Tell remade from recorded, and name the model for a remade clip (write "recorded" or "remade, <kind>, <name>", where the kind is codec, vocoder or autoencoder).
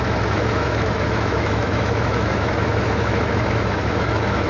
remade, autoencoder, DAC-VAE